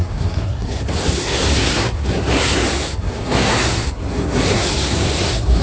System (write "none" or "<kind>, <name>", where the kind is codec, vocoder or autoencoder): codec, SNAC